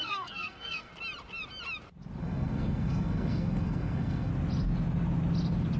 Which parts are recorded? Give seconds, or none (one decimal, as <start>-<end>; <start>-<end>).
0.9-2.2; 4.3-5.8